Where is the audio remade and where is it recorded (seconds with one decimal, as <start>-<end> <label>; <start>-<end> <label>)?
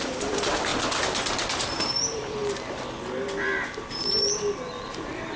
0.0-0.7 remade; 0.7-1.6 recorded; 1.6-2.4 remade; 2.4-4.9 recorded; 4.9-5.4 remade